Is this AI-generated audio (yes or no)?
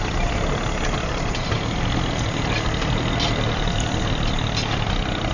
no